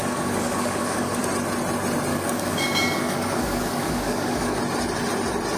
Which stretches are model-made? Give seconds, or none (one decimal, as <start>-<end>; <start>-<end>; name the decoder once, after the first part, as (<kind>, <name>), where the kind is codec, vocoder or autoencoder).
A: 0.0-1.2 (codec, DAC); 2.1-4.6